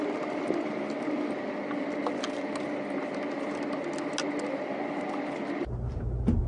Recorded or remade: recorded